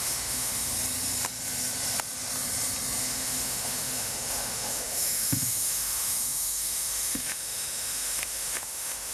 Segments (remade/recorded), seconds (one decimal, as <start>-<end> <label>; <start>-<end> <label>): 0.0-0.7 remade; 0.7-3.0 recorded; 3.0-9.1 remade